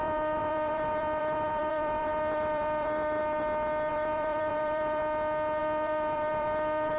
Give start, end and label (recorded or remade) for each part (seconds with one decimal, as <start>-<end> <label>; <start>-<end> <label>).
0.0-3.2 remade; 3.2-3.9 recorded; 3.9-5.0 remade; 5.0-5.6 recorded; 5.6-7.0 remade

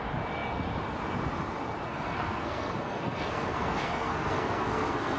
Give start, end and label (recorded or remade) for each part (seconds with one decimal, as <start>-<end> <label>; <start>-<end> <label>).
0.0-1.9 recorded; 1.9-5.2 remade

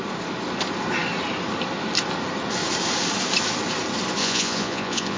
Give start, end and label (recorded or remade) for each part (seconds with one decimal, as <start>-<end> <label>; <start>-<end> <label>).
0.0-4.2 recorded; 4.2-5.2 remade

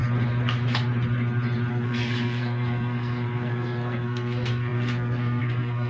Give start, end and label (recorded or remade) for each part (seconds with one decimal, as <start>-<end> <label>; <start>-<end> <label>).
0.0-1.7 recorded; 1.7-5.9 remade

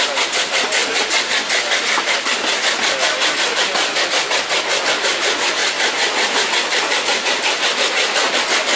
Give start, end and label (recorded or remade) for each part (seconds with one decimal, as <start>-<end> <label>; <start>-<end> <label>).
0.0-8.8 recorded